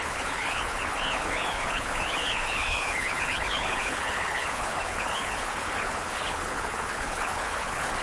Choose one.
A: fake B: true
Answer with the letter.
A